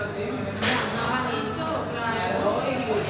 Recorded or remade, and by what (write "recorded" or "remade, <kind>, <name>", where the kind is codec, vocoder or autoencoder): recorded